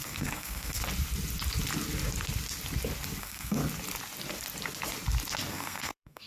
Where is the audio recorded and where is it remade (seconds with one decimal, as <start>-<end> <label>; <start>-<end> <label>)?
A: 0.0-0.8 remade; 0.8-3.2 recorded; 3.2-3.6 remade; 3.6-5.5 recorded; 5.5-6.3 remade